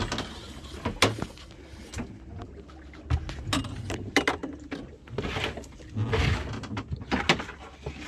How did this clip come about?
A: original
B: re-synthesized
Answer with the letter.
A